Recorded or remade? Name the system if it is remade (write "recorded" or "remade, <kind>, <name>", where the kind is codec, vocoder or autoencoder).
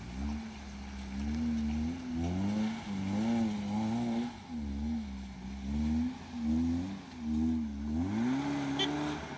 recorded